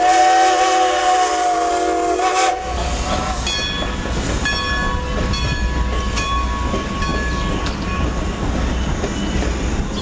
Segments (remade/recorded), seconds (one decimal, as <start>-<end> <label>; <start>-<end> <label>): 0.0-10.0 recorded